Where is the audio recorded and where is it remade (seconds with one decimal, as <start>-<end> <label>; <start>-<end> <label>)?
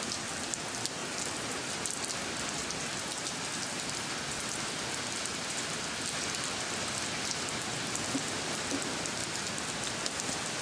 0.0-5.3 recorded; 5.3-7.1 remade; 7.1-10.6 recorded